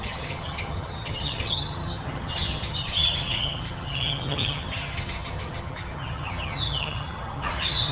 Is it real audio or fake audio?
fake